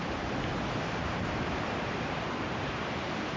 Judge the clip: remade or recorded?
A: remade